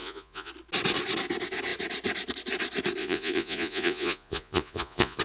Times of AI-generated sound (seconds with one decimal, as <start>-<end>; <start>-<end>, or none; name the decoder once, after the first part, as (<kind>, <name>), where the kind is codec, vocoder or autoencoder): 0.0-0.5 (vocoder, Vocos); 3.0-5.2